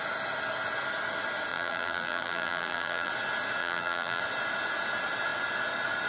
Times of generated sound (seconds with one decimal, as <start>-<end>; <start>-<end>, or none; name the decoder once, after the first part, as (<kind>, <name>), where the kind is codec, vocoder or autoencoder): 1.5-3.1 (vocoder, BigVGAN v2); 3.6-4.2